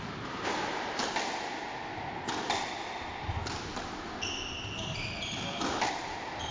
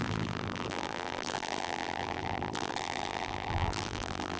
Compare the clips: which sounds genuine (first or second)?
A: first